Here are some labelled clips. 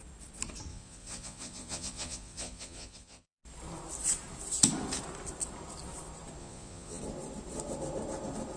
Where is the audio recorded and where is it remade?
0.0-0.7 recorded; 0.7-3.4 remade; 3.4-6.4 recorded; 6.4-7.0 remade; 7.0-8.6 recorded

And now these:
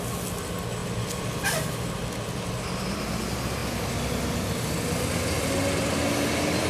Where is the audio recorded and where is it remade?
0.0-6.7 recorded

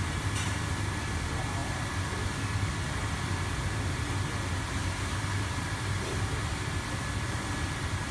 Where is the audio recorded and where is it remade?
0.0-8.1 recorded

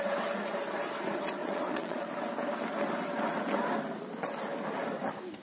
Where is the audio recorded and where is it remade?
0.0-1.4 recorded; 1.4-2.1 remade; 2.1-5.4 recorded

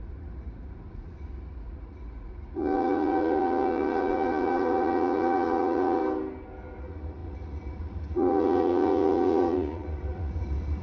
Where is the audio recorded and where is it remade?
0.0-6.0 remade; 6.0-6.8 recorded; 6.8-10.8 remade

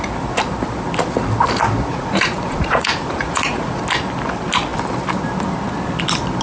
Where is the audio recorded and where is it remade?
0.0-1.9 recorded; 1.9-3.8 remade; 3.8-6.4 recorded